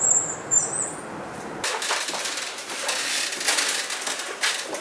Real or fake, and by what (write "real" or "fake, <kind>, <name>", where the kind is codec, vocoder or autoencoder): real